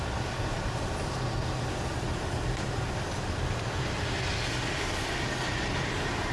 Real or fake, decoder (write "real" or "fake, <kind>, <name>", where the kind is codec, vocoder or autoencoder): fake, vocoder, BigVGAN v2